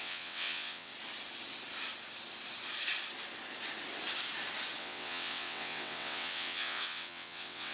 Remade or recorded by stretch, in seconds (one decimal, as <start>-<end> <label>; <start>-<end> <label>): 0.0-0.9 remade; 0.9-4.8 recorded; 4.8-7.7 remade